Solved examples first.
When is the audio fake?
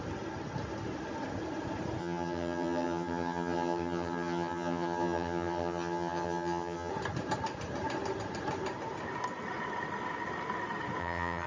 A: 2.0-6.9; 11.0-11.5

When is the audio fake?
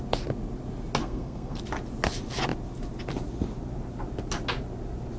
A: 1.0-1.6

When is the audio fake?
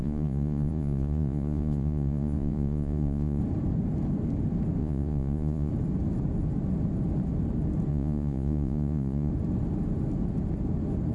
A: 0.0-3.4; 4.8-5.7; 7.9-9.3